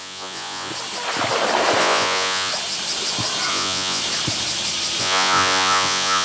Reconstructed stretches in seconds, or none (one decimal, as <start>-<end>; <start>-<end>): 0.0-0.7; 1.8-2.5; 3.5-4.0; 5.0-6.2